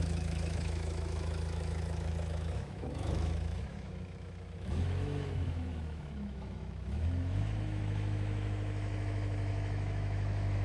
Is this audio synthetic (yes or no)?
yes